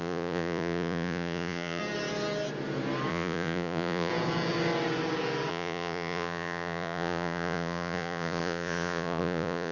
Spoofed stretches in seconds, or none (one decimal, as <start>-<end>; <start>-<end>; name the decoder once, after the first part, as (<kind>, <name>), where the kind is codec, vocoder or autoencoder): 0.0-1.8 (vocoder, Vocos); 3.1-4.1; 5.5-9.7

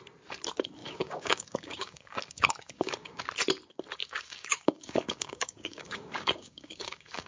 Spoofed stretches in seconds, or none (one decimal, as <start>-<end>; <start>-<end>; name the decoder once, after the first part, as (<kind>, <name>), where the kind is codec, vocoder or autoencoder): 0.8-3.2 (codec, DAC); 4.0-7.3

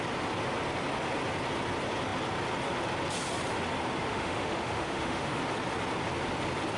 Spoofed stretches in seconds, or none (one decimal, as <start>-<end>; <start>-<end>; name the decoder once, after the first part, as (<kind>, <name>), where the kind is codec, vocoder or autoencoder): 4.1-5.4 (autoencoder, DAC-VAE)

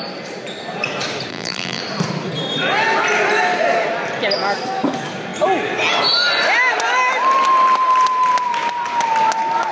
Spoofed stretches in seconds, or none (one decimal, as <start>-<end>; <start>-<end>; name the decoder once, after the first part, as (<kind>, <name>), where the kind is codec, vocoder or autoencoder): 1.3-1.8 (vocoder, BigVGAN v2)

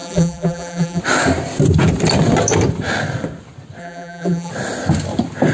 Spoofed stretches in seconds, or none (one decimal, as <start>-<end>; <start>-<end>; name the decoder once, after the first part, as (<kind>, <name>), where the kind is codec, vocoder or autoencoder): 0.0-1.0 (vocoder, BigVGAN v2); 3.8-4.5

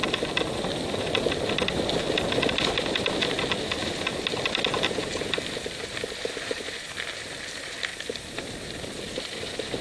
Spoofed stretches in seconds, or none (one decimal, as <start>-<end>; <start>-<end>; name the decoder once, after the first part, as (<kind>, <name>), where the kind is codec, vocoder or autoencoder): 3.8-4.6 (vocoder, BigVGAN v2); 5.0-7.0; 7.9-9.0